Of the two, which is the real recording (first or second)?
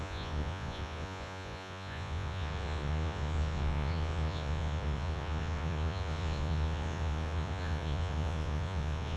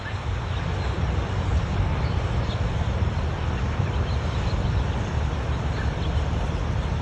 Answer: second